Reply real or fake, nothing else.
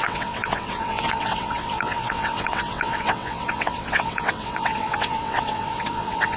fake